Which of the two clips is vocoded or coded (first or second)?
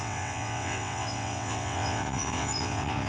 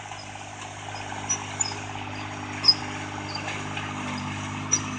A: first